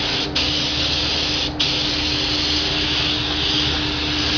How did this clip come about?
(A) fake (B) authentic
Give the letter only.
B